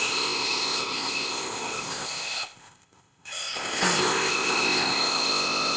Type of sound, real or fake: fake